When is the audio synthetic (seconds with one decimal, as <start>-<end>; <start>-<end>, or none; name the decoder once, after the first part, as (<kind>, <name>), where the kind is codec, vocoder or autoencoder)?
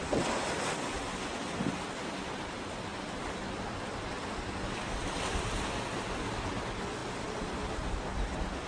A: 7.0-7.9 (vocoder, BigVGAN v2)